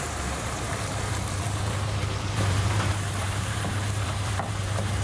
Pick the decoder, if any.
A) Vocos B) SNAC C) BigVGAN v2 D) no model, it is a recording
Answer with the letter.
C